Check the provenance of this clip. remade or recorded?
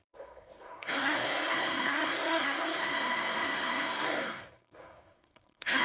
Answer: remade